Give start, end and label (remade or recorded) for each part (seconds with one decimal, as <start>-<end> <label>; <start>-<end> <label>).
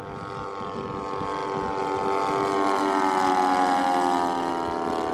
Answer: 0.0-5.1 recorded